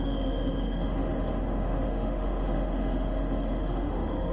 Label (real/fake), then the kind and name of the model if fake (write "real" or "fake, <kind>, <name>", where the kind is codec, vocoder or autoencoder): fake, autoencoder, DAC-VAE